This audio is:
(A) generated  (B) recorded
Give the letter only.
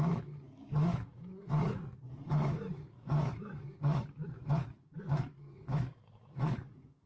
A